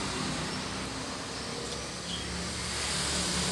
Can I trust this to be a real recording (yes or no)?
yes